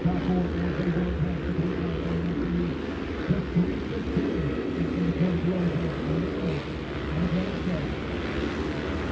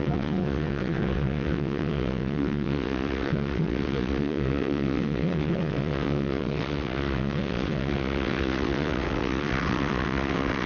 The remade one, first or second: second